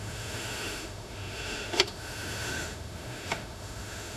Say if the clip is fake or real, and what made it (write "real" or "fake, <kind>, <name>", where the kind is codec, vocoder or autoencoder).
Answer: fake, autoencoder, DAC-VAE